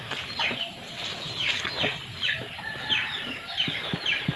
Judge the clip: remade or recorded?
remade